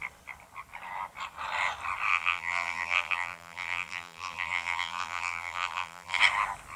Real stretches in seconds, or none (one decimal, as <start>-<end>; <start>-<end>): 0.0-2.1; 6.2-6.8

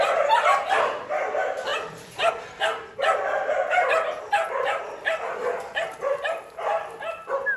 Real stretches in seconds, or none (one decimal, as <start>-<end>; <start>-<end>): 0.0-1.7; 2.3-7.6

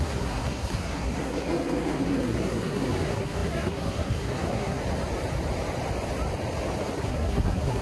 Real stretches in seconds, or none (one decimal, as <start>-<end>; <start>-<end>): 4.8-6.9